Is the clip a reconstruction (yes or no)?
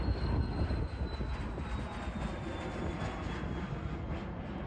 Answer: no